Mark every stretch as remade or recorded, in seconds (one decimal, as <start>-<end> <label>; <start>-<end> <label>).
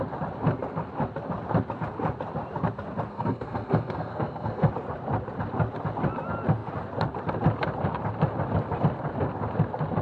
0.0-3.1 recorded; 3.1-4.7 remade; 4.7-10.0 recorded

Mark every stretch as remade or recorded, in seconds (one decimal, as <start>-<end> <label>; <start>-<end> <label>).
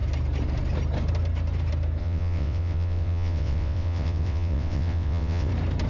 0.0-2.0 recorded; 2.0-5.5 remade; 5.5-5.9 recorded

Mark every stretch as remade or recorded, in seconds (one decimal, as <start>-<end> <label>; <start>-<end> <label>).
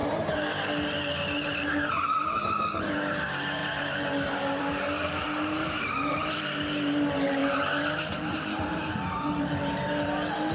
0.0-10.5 remade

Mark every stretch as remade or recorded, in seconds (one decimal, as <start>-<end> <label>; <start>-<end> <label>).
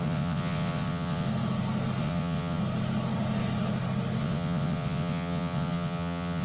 0.0-1.3 remade; 1.3-2.0 recorded; 2.0-2.6 remade; 2.6-4.2 recorded; 4.2-6.4 remade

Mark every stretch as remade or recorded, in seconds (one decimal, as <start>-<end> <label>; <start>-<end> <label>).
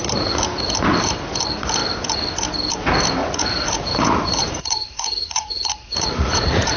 0.0-3.2 recorded; 3.2-6.8 remade